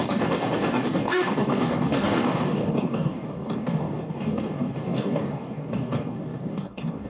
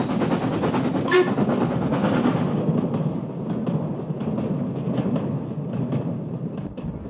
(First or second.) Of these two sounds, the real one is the second